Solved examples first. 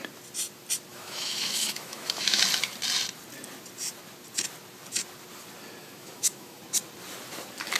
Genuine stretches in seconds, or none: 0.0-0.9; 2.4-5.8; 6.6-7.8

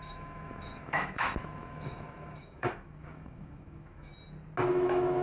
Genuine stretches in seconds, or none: 4.1-4.7

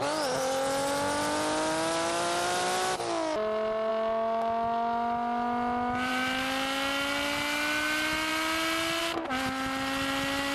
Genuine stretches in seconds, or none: 0.0-10.5

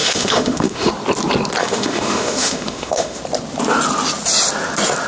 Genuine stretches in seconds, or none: 0.9-1.6; 3.2-5.1

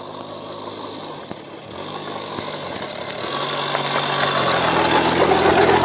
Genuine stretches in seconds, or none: 0.0-5.8

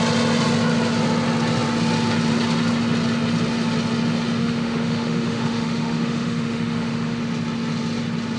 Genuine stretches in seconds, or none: 0.0-4.4; 7.2-8.4

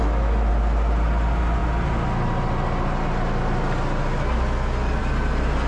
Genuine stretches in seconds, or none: 0.5-5.7